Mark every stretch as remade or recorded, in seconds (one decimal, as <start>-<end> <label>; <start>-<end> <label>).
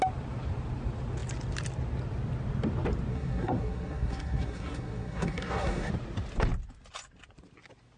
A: 0.0-3.1 recorded; 3.1-5.9 remade; 5.9-8.0 recorded